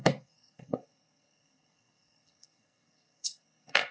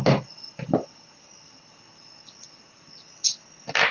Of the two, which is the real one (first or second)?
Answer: second